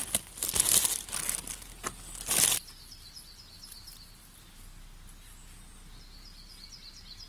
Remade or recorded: recorded